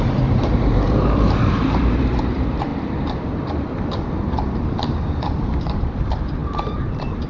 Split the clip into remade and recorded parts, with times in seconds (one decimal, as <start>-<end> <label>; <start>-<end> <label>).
0.0-2.7 remade; 2.7-3.2 recorded; 3.2-7.3 remade